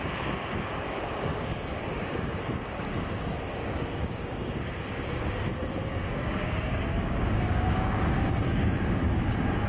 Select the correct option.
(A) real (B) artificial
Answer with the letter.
B